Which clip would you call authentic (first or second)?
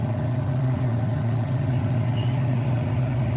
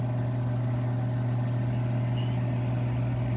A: second